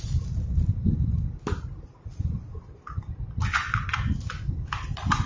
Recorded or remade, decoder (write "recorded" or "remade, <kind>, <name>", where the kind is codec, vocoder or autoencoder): recorded